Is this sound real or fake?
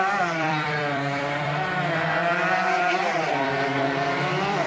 fake